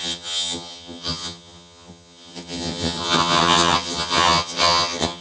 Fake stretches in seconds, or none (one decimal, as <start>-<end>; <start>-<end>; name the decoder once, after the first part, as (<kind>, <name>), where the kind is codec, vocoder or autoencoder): 0.0-5.2 (vocoder, HiFi-GAN)